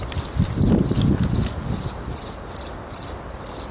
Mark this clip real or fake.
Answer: real